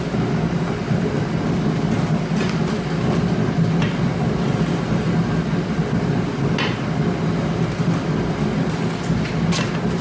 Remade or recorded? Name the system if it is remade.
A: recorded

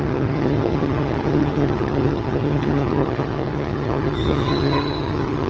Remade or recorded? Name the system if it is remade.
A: remade, vocoder, HiFi-GAN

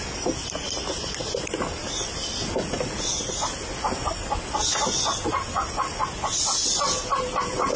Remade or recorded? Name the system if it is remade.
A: recorded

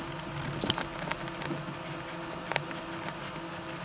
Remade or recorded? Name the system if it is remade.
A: recorded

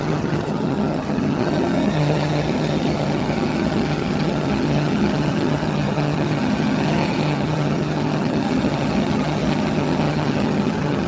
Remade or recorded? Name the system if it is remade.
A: remade, vocoder, HiFi-GAN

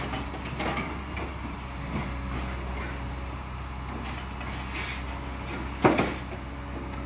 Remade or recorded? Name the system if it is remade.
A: recorded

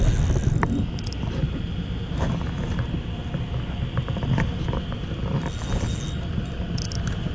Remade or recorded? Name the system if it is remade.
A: recorded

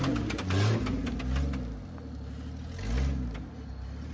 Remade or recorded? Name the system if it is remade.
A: recorded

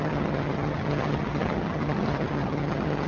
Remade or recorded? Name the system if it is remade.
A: remade, vocoder, HiFi-GAN